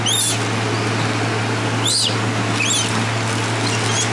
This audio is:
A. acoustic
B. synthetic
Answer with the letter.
A